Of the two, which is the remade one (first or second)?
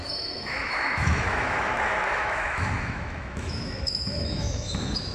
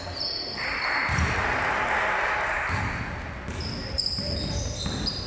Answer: first